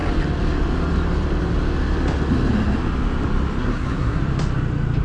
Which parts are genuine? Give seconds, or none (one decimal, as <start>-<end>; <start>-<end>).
0.0-3.6; 4.2-5.0